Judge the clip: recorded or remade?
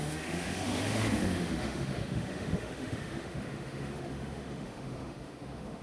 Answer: remade